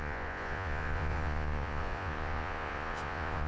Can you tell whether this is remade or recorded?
remade